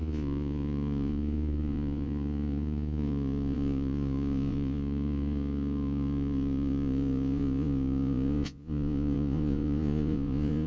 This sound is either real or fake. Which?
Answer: fake